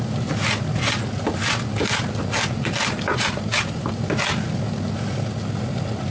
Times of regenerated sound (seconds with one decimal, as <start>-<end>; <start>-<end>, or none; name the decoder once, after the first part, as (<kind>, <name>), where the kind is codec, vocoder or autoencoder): 3.1-3.9 (vocoder, BigVGAN v2)